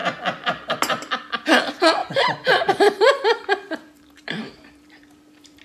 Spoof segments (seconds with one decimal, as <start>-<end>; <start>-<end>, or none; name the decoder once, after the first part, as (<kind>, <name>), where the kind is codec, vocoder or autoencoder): 2.0-5.6 (vocoder, BigVGAN v2)